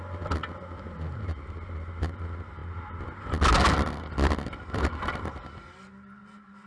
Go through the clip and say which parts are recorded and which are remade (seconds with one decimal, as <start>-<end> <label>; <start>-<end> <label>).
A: 0.0-6.7 recorded